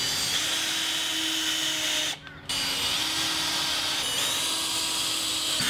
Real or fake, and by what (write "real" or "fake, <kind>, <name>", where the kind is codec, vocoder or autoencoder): real